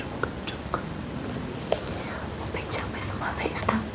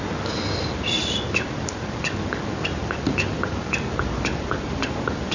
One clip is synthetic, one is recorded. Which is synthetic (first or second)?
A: first